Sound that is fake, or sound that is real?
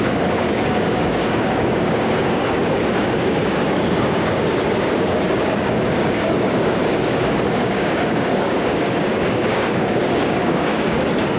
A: fake